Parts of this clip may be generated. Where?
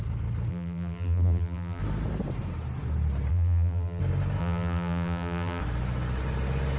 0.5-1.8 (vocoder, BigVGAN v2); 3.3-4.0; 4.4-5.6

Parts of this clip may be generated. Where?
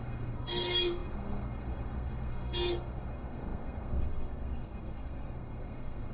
0.0-6.1 (codec, SNAC)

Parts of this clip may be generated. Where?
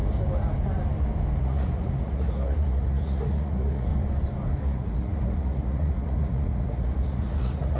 1.4-3.9 (vocoder, Vocos); 4.6-7.8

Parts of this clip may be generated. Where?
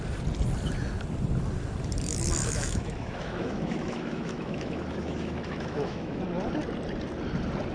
2.4-6.2 (autoencoder, DAC-VAE)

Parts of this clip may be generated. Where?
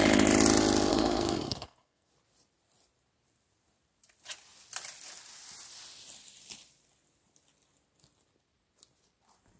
0.9-2.1 (codec, SNAC)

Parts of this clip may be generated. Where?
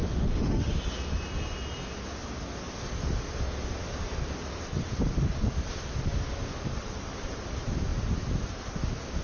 0.0-0.8 (autoencoder, DAC-VAE)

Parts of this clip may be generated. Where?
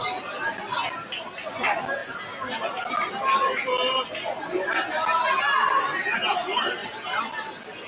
none